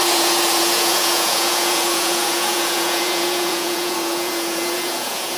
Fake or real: fake